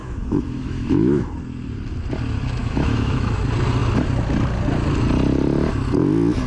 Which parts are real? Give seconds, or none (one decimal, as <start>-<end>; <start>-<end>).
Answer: 1.3-2.6; 3.4-6.5